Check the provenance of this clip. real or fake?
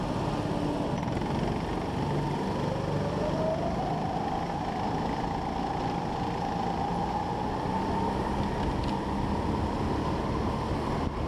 real